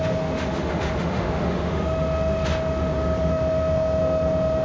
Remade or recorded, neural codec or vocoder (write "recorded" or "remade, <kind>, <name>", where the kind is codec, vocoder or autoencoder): remade, autoencoder, DAC-VAE